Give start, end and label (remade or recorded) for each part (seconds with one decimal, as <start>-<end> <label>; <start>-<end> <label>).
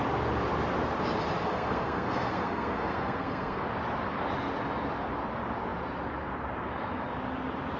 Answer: 0.0-1.4 recorded; 1.4-3.6 remade; 3.6-7.8 recorded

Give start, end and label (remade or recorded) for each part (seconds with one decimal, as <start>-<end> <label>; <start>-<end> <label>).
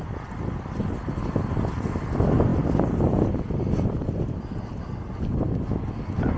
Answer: 0.0-6.4 recorded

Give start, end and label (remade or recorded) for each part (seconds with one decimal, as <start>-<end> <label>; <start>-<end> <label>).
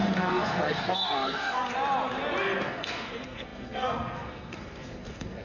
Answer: 0.0-1.7 remade; 1.7-2.4 recorded; 2.4-5.4 remade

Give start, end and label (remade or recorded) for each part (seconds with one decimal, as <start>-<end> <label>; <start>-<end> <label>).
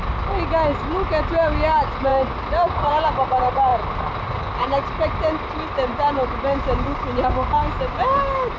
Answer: 0.0-8.6 recorded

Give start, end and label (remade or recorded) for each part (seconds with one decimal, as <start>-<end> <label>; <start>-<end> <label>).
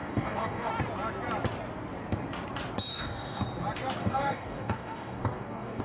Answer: 0.0-0.7 remade; 0.7-2.9 recorded; 2.9-3.4 remade; 3.4-4.0 recorded; 4.0-5.8 remade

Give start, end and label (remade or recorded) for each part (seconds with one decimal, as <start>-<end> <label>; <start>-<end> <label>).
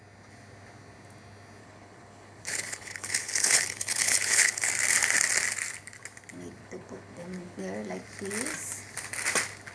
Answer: 0.0-1.6 recorded; 1.6-4.7 remade; 4.7-6.6 recorded; 6.6-7.6 remade; 7.6-9.7 recorded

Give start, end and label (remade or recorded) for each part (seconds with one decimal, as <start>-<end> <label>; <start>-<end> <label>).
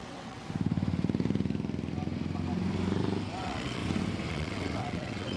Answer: 0.0-0.4 remade; 0.4-3.4 recorded; 3.4-3.8 remade; 3.8-4.3 recorded; 4.3-5.4 remade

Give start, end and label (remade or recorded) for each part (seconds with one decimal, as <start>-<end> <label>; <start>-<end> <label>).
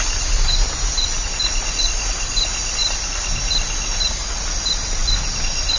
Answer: 0.0-5.8 recorded